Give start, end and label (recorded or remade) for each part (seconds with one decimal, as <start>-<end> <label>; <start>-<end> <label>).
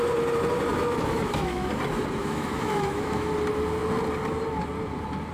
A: 0.0-0.7 recorded; 0.7-1.7 remade; 1.7-2.2 recorded; 2.2-3.3 remade; 3.3-5.3 recorded